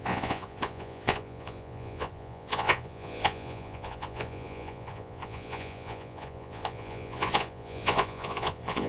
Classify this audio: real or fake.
fake